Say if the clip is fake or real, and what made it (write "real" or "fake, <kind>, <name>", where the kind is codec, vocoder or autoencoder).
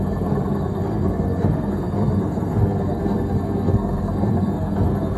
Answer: fake, codec, SNAC